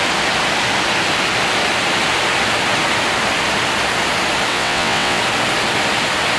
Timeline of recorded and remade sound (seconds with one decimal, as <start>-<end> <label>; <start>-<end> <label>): 0.0-4.5 recorded; 4.5-5.2 remade; 5.2-6.4 recorded